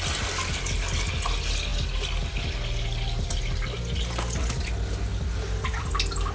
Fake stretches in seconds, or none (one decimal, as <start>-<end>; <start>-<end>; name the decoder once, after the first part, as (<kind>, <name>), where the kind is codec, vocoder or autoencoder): none